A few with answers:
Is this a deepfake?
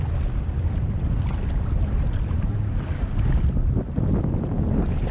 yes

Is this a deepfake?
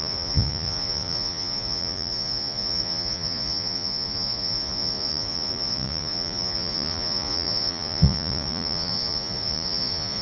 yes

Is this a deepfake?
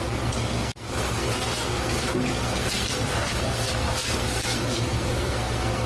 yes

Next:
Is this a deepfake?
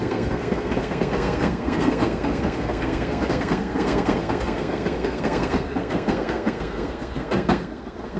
yes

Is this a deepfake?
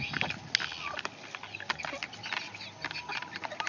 no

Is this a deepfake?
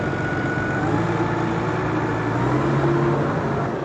no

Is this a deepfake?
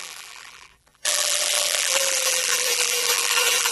yes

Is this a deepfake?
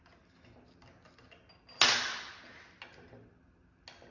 no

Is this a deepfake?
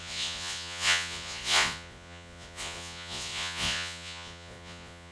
yes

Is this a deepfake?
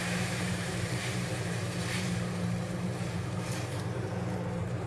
yes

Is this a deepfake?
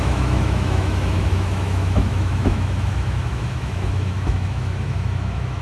yes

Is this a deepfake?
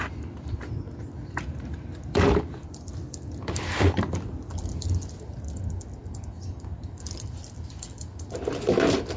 yes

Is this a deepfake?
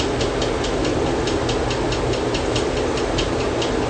no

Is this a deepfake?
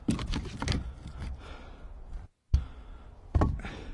no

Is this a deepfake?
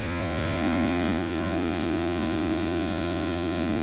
yes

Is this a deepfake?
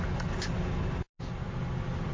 no